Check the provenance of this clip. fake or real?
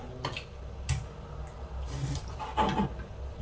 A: real